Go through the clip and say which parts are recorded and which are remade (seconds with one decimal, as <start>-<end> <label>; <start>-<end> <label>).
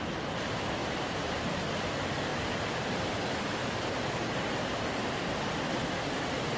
0.0-0.8 recorded; 0.8-1.6 remade; 1.6-2.3 recorded; 2.3-5.1 remade; 5.1-6.6 recorded